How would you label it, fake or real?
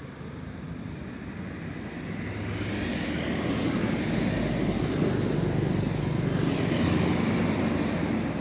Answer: real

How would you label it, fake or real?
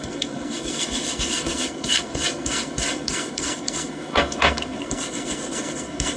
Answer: fake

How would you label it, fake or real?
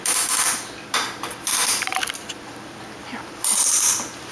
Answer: fake